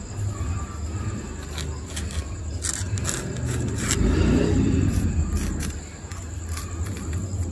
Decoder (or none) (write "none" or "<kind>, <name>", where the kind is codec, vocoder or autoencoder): none